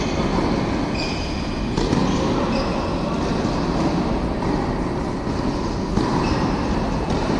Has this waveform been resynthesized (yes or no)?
no